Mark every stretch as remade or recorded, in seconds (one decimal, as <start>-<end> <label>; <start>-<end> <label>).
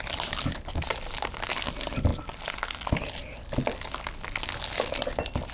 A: 0.0-5.5 recorded